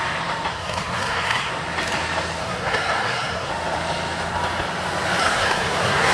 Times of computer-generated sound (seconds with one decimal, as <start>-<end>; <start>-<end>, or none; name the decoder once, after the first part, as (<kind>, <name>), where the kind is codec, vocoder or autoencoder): 0.5-1.5 (codec, SNAC); 2.4-3.5; 5.2-6.1